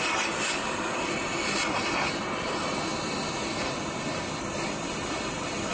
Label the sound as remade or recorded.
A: recorded